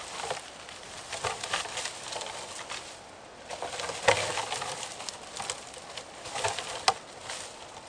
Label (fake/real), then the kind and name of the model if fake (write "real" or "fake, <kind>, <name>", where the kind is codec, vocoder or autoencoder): real